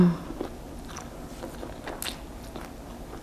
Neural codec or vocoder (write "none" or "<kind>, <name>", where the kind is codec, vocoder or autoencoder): none